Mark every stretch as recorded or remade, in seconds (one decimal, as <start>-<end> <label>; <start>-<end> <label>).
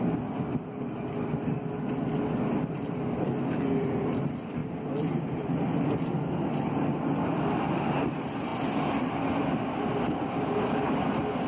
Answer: 0.0-11.5 recorded